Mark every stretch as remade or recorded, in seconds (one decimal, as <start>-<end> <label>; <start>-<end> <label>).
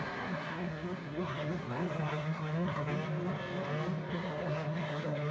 0.0-2.9 remade; 2.9-4.1 recorded; 4.1-5.3 remade